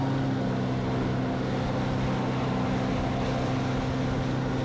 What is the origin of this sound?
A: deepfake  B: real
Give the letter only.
B